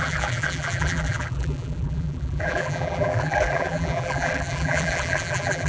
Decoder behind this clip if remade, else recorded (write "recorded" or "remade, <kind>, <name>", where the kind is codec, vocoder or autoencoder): remade, vocoder, BigVGAN v2